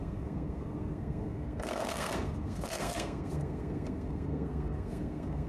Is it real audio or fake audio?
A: fake